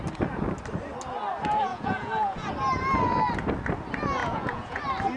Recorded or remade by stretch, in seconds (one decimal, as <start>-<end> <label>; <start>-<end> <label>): 0.0-1.7 recorded; 1.7-2.5 remade; 2.5-4.2 recorded; 4.2-4.8 remade; 4.8-5.2 recorded